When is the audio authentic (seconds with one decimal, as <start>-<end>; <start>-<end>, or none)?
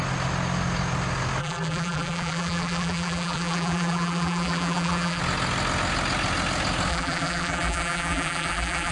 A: 0.0-1.4; 5.2-6.9